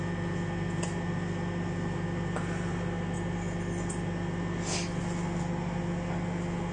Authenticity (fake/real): real